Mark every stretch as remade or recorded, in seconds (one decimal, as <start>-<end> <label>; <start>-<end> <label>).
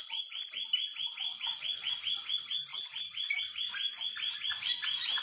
0.0-1.3 recorded; 1.3-1.9 remade; 1.9-5.2 recorded